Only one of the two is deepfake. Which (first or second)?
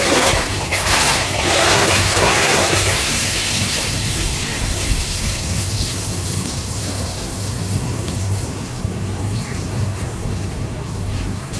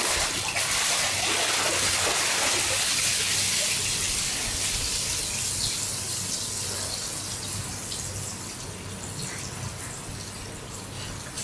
first